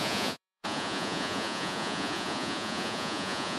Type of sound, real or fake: fake